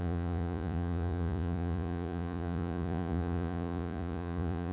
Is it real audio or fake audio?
fake